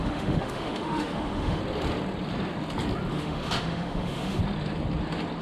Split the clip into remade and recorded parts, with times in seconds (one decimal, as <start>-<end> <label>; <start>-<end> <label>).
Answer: 0.0-1.6 remade; 1.6-3.1 recorded; 3.1-4.4 remade; 4.4-5.4 recorded